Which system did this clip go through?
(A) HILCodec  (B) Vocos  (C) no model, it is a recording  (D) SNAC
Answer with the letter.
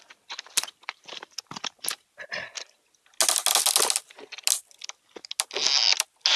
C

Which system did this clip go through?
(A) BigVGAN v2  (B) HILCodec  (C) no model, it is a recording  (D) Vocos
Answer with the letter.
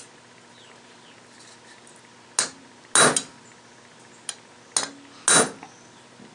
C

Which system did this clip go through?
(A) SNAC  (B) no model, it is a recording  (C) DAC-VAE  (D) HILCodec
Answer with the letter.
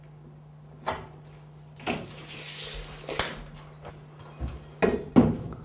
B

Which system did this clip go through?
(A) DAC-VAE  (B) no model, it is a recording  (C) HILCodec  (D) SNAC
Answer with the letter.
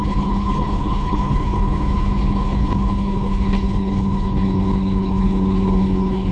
C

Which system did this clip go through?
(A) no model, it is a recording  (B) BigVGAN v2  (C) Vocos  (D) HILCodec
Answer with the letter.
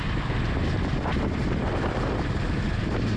A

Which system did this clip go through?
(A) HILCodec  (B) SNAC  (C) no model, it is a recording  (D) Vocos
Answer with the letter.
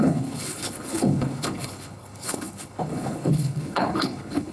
A